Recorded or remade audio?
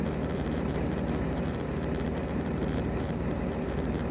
remade